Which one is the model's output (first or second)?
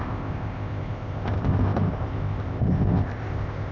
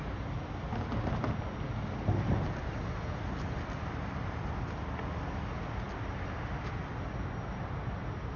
first